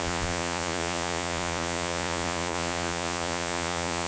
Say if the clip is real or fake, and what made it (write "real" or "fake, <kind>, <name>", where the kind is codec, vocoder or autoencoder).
fake, vocoder, Vocos